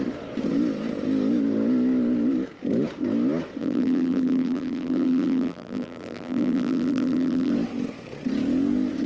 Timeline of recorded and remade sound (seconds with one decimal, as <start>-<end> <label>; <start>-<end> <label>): 0.0-3.6 recorded; 3.6-7.5 remade; 7.5-9.1 recorded